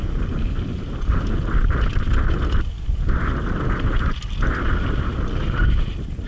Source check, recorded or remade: recorded